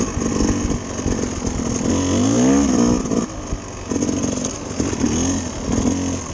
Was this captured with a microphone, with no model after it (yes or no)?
yes